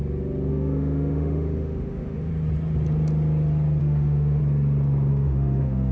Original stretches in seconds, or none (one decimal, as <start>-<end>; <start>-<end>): 0.0-0.5; 2.3-3.8; 4.4-5.1